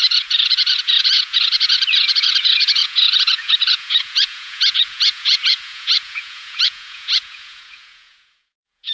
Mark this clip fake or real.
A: fake